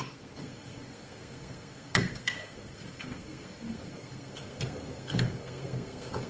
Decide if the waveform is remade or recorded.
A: remade